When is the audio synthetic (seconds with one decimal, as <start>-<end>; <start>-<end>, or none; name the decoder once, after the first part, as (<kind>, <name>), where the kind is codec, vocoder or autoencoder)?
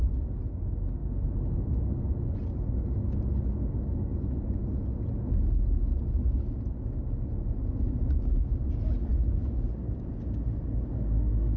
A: 10.9-11.6 (codec, SNAC)